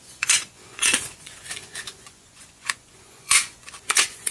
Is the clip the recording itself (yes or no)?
no